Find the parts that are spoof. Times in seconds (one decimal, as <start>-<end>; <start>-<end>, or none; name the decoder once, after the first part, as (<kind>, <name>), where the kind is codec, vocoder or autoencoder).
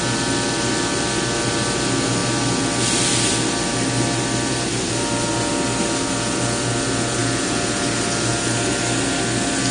none